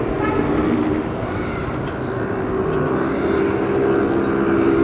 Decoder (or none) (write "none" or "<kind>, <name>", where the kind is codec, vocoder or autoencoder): none